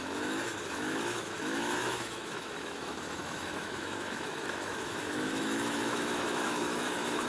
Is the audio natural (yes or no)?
no